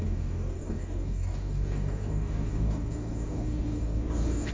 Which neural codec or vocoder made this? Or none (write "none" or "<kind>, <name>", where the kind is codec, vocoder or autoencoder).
codec, DAC